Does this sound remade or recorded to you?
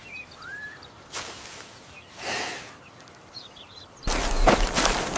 remade